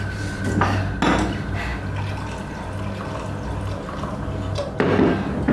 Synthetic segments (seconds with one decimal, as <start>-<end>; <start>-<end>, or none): none